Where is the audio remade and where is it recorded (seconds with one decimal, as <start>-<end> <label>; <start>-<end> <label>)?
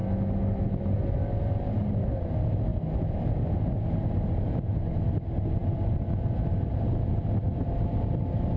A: 0.0-8.6 recorded